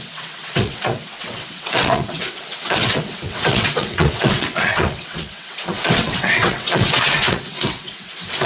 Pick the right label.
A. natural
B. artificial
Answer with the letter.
B